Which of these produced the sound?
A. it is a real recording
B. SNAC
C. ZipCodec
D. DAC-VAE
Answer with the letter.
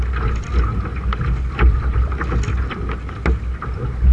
A